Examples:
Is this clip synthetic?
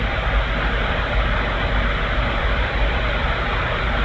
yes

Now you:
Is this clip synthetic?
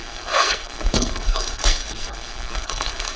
yes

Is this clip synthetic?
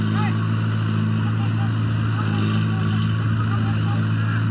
no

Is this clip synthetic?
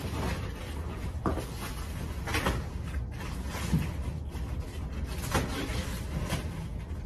no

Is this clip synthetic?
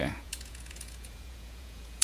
yes